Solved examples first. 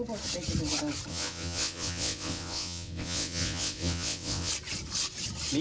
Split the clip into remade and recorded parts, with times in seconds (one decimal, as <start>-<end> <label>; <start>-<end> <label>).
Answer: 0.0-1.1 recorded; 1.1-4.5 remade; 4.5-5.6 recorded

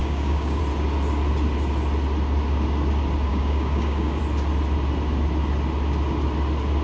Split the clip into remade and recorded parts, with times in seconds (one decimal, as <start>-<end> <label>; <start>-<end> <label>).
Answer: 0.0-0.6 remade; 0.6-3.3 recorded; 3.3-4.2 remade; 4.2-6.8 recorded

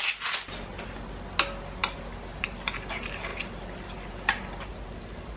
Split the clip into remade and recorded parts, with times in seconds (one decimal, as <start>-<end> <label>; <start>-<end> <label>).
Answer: 0.0-5.4 recorded